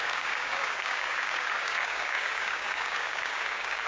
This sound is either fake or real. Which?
fake